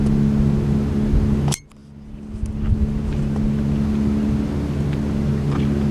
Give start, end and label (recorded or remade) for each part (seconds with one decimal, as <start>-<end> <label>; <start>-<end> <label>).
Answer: 0.0-5.9 recorded